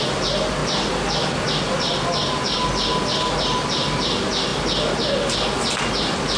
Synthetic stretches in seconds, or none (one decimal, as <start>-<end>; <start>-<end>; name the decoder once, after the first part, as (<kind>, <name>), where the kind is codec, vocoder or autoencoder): none